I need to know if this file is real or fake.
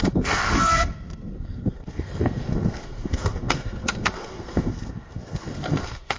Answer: fake